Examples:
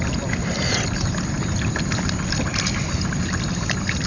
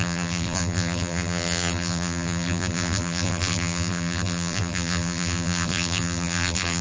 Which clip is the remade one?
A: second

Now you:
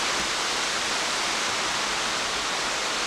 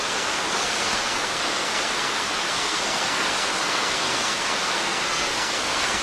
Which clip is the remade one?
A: second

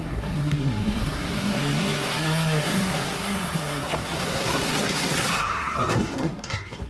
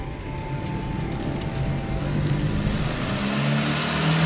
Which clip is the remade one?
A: first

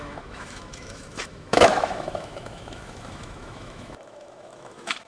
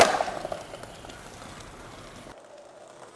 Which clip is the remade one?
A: first